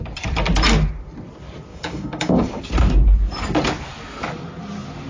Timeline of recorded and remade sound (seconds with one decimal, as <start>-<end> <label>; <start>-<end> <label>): 0.0-1.7 recorded; 1.7-2.6 remade; 2.6-5.1 recorded